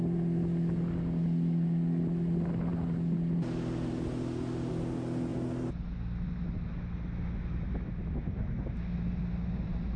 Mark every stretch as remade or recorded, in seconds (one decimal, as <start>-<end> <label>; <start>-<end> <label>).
0.0-10.0 recorded